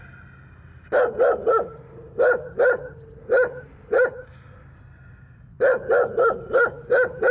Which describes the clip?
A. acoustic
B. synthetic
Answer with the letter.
A